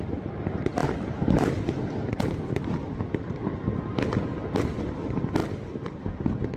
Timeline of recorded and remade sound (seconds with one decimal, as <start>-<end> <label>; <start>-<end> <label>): 0.0-0.8 recorded; 0.8-4.8 remade; 4.8-5.4 recorded; 5.4-6.0 remade; 6.0-6.6 recorded